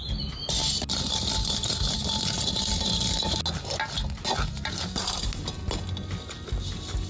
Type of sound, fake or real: real